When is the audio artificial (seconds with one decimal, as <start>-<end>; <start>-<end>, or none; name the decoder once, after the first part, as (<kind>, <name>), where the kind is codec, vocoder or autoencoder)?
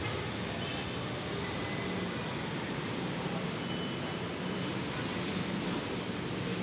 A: none